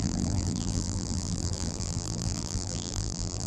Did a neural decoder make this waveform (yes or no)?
yes